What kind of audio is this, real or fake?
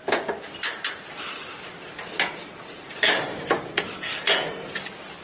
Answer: real